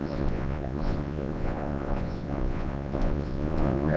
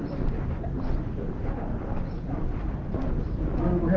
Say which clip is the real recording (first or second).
second